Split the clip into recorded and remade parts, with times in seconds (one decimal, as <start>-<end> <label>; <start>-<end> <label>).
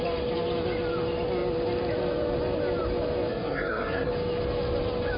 0.0-3.3 recorded; 3.3-4.1 remade; 4.1-5.2 recorded